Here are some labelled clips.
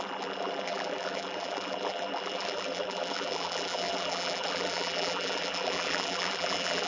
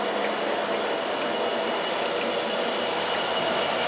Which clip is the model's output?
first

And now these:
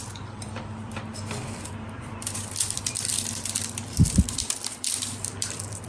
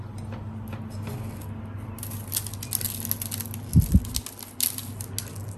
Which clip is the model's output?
first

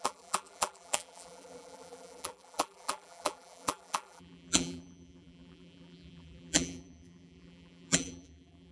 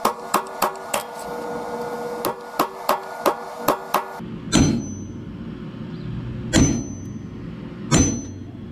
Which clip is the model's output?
first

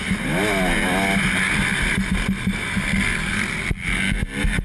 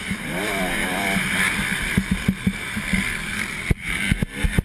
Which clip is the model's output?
second